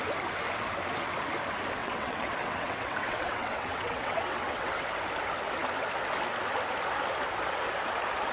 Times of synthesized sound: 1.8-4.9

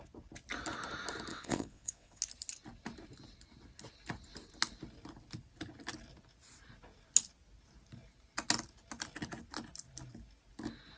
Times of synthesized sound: 1.3-2.2

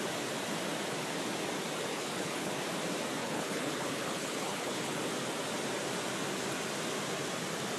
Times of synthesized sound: 1.9-2.5; 3.2-5.0